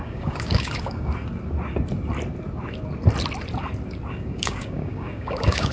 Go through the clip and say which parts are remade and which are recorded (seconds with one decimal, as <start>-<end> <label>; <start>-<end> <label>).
0.0-1.1 remade; 1.1-4.1 recorded; 4.1-5.7 remade